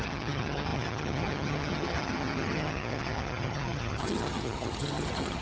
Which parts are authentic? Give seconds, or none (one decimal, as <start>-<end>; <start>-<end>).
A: none